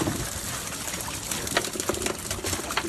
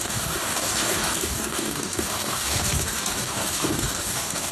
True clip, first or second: first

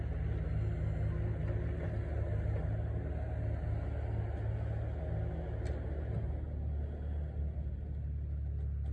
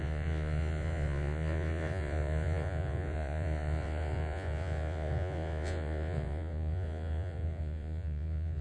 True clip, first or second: first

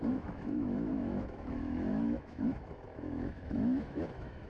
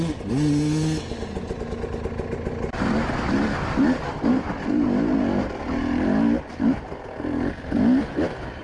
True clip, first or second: second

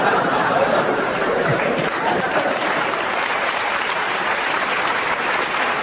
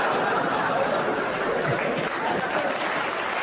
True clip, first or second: second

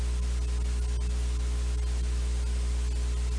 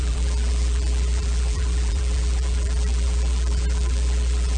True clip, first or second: first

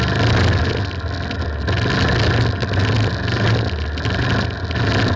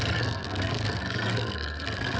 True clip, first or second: first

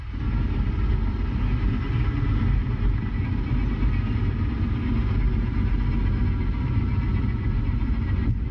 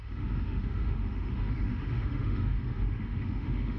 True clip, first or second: first